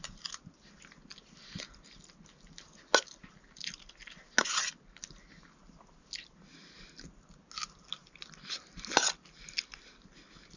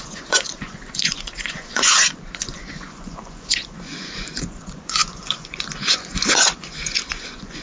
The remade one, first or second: second